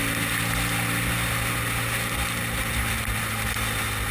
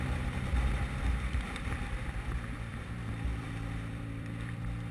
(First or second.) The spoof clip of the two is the second